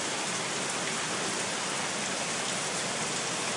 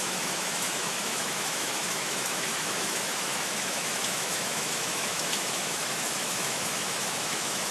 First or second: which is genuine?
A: first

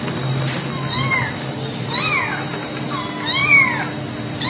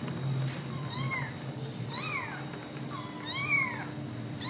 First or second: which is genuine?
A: first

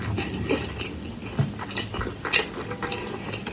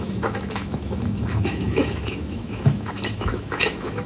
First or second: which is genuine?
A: first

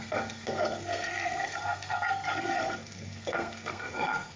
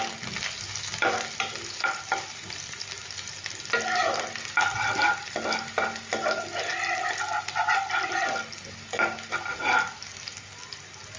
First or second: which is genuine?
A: second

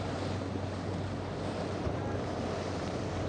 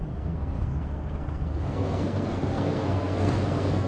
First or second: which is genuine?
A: first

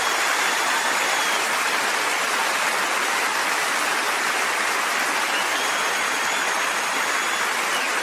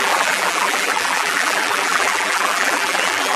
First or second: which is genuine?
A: first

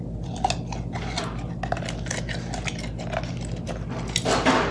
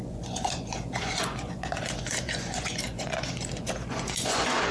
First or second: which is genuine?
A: first